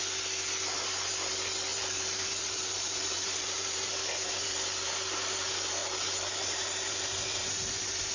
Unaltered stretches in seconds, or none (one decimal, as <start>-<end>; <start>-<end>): 0.0-1.7; 4.5-5.8